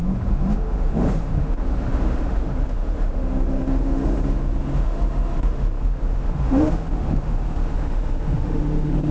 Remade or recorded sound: remade